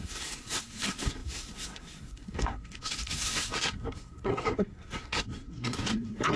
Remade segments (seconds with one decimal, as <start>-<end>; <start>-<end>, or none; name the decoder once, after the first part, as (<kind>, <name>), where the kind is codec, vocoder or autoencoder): 0.0-6.4 (codec, SNAC)